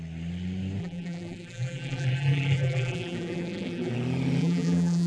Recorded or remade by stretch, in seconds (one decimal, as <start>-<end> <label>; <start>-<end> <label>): 0.0-0.8 recorded; 0.8-3.9 remade; 3.9-4.4 recorded; 4.4-5.1 remade